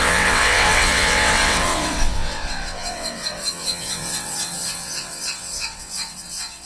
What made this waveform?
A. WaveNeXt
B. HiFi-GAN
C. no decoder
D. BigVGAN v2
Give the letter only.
A